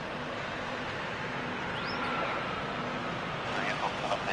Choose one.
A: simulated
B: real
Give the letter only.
B